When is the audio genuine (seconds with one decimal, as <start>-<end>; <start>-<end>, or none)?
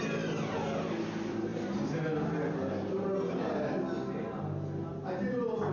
0.0-5.7